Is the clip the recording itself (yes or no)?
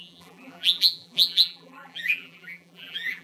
no